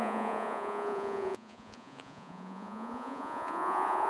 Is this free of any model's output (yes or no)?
no